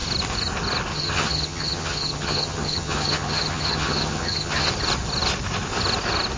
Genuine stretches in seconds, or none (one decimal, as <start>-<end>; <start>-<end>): 0.0-0.9; 4.7-6.4